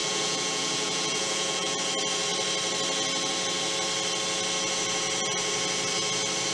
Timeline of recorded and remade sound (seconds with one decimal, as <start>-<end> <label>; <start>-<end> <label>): 0.0-1.8 remade; 1.8-6.5 recorded